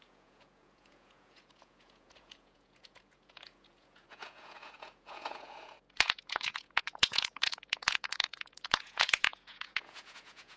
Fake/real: fake